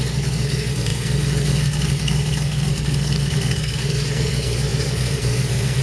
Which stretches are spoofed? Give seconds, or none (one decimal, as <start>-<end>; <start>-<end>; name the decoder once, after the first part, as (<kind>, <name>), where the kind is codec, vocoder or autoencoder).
0.0-5.8 (codec, SNAC)